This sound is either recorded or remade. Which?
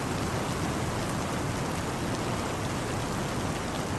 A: recorded